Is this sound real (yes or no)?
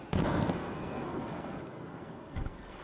no